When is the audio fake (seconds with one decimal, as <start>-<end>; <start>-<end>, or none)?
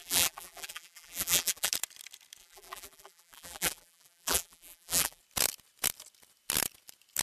0.0-1.7; 2.4-5.2